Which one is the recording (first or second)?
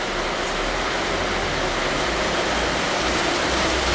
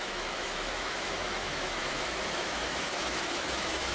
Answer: first